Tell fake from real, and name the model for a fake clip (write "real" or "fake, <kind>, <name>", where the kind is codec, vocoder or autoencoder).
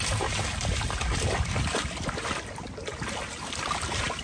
real